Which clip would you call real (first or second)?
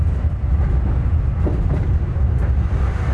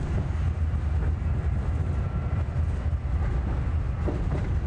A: second